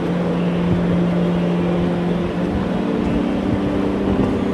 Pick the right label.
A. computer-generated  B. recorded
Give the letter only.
B